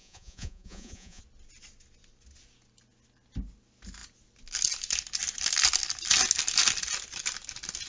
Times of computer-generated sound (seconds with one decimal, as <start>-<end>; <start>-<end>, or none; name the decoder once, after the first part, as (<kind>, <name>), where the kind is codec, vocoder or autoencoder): 0.0-1.2 (vocoder, Vocos)